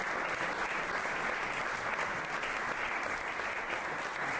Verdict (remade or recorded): recorded